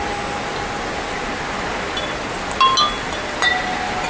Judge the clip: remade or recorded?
recorded